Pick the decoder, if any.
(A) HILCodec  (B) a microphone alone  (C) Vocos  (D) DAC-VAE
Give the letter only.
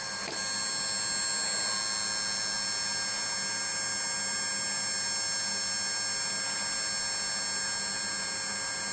B